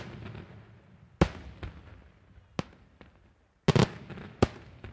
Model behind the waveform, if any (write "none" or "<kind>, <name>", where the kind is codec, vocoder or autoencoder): none